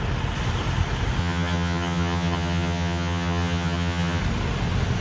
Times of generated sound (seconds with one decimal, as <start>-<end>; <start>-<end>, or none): 1.2-4.2

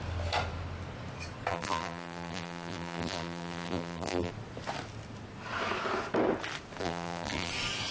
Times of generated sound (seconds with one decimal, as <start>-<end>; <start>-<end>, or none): 1.5-4.3; 6.8-7.5

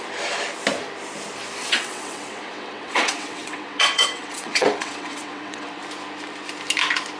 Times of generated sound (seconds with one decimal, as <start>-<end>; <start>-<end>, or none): 1.6-5.8

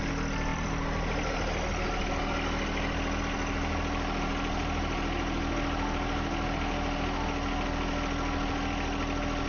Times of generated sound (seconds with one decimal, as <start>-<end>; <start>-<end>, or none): none